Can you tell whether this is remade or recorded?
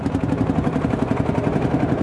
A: recorded